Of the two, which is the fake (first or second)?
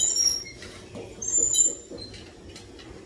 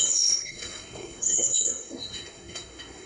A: second